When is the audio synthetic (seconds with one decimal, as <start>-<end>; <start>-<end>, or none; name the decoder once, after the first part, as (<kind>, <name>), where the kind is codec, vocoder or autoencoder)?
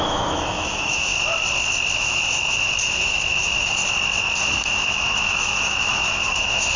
0.0-1.1 (autoencoder, DAC-VAE); 1.9-3.8; 4.4-6.8